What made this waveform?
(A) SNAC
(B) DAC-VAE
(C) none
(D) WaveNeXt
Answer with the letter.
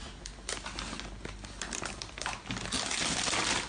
C